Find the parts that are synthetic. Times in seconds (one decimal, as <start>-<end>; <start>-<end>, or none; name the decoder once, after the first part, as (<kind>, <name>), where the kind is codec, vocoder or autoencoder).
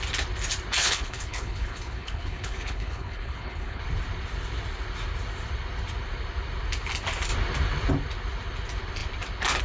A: 0.8-3.8 (codec, HILCodec)